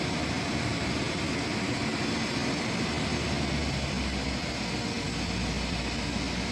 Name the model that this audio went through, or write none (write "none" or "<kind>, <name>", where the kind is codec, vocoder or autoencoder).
none